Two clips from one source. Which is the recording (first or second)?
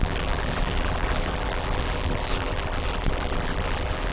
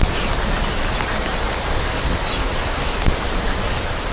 second